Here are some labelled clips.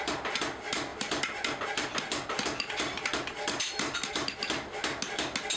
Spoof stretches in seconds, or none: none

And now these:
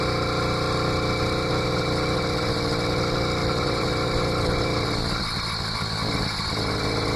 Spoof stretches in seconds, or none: 3.4-4.0